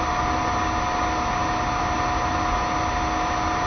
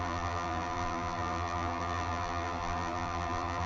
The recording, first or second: first